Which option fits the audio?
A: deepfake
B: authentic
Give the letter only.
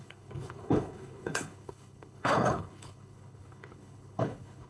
A